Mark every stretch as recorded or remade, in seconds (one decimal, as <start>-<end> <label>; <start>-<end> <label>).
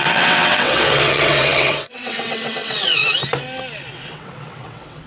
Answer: 0.0-3.0 remade; 3.0-3.9 recorded; 3.9-5.1 remade